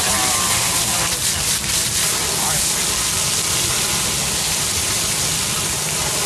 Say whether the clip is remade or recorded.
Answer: recorded